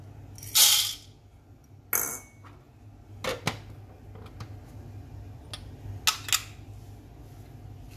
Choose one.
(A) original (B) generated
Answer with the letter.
A